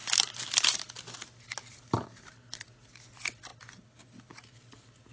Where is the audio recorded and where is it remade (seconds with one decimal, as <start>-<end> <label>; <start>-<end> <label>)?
0.0-5.1 recorded